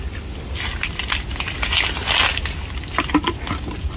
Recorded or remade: recorded